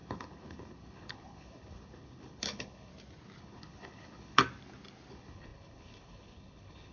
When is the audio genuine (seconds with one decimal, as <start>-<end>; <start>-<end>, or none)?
2.9-3.4; 4.4-5.1